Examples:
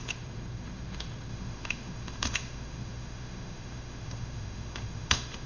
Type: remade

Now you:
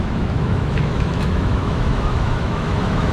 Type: remade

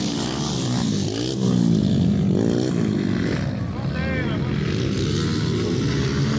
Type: recorded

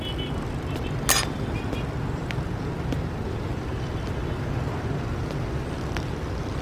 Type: recorded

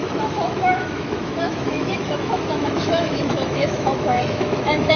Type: remade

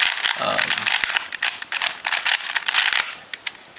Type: recorded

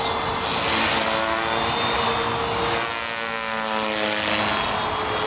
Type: recorded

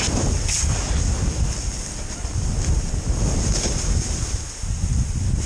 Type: recorded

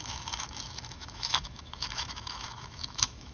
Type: remade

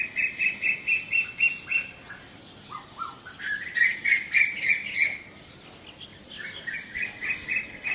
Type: recorded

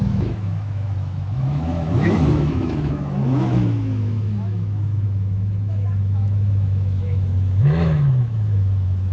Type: remade